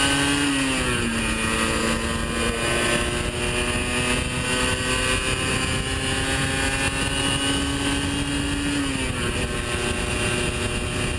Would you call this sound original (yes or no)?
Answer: yes